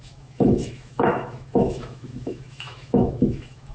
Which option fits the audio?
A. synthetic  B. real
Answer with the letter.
A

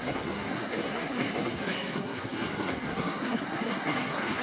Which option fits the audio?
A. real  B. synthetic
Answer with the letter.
B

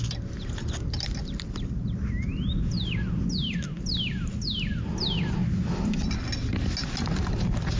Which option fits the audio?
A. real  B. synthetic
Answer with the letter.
A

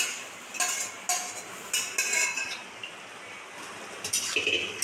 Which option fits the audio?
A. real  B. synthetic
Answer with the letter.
A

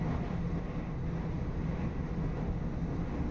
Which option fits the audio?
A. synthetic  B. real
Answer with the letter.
B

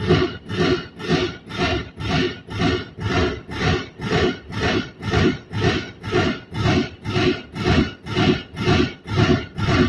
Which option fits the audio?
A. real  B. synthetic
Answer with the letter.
A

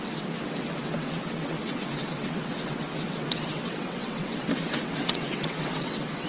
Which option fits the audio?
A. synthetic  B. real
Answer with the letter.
A